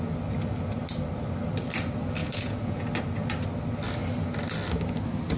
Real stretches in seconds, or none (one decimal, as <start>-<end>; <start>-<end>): 0.0-2.2; 2.8-5.4